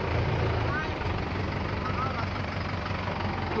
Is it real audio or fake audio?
real